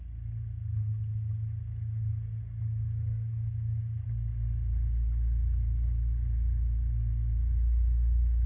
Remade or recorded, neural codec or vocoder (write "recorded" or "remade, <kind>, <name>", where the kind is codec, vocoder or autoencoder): recorded